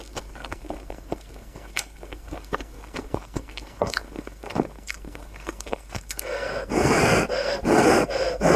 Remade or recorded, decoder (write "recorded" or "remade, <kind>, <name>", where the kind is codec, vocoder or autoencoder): remade, codec, SNAC